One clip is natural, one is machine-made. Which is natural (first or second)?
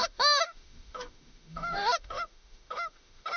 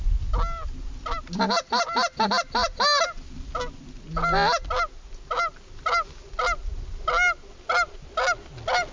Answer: second